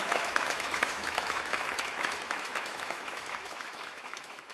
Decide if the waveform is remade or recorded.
remade